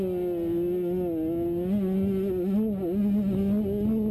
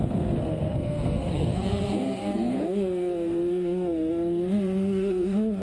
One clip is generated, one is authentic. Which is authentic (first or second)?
first